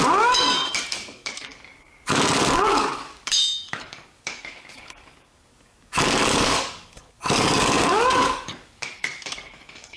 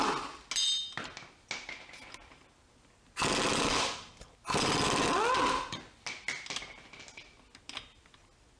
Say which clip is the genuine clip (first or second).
second